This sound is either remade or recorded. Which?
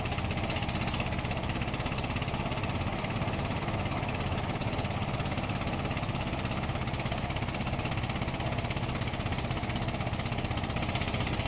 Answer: recorded